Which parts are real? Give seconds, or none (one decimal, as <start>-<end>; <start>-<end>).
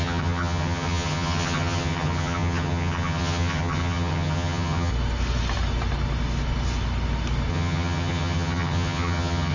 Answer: 4.9-7.5